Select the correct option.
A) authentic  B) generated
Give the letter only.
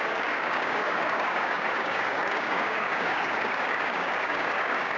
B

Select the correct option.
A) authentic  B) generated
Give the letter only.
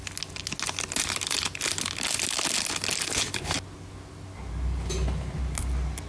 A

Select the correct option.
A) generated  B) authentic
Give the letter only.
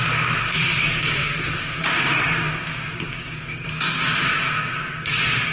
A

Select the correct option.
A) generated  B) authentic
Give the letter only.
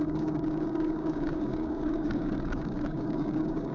A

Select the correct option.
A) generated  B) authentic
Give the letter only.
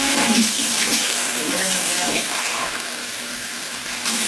A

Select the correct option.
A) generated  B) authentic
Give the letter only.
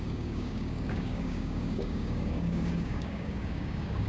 A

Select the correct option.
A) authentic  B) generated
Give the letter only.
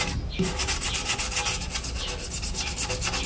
A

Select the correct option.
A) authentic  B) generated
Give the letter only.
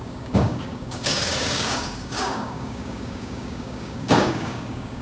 B